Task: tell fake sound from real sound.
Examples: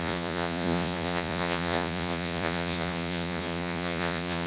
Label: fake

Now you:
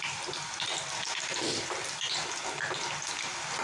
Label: real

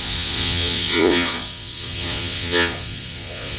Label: fake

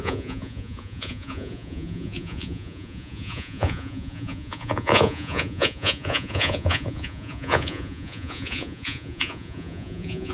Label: fake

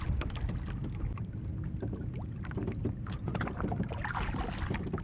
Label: real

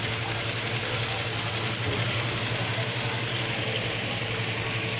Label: real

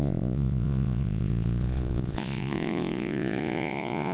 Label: fake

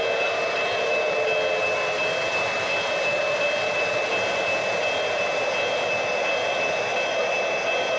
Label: real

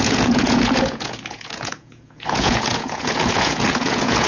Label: fake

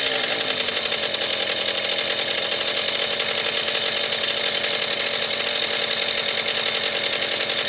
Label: real